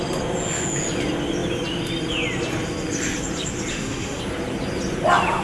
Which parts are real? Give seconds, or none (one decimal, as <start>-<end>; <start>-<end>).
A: 0.0-3.7; 4.2-5.4